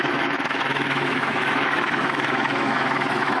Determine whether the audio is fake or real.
fake